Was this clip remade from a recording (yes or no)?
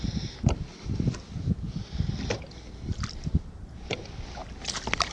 no